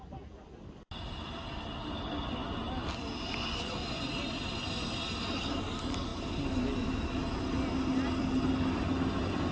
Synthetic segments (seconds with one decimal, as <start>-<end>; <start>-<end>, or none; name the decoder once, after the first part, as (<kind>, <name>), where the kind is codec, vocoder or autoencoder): none